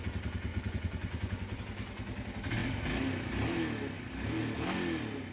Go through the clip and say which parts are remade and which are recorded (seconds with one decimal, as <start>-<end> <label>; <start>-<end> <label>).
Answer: 0.0-0.5 recorded; 0.5-1.6 remade; 1.6-5.3 recorded